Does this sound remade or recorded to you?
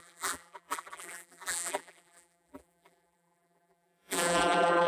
remade